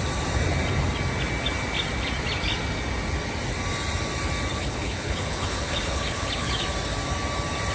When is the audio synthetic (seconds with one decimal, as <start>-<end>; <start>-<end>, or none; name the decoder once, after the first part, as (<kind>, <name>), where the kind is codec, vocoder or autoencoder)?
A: 4.5-6.6 (codec, HILCodec)